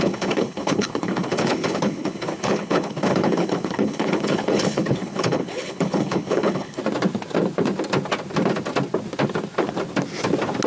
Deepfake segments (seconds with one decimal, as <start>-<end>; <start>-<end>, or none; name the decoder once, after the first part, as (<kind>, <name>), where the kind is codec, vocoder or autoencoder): 0.0-6.8 (codec, HILCodec)